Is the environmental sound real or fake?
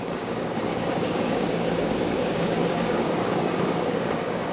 fake